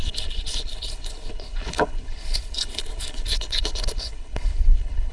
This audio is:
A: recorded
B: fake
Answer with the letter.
B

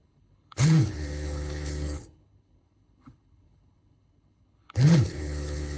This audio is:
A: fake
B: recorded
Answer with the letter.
A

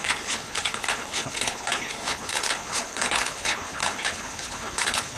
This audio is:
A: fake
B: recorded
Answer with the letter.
A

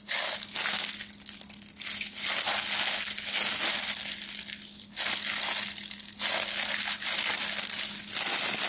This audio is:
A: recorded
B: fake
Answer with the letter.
A